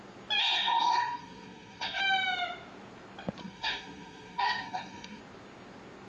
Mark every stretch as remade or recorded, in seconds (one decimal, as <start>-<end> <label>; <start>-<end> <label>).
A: 0.0-0.4 recorded; 0.4-2.0 remade; 2.0-3.4 recorded; 3.4-5.2 remade; 5.2-6.1 recorded